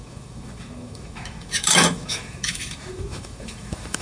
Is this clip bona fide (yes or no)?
no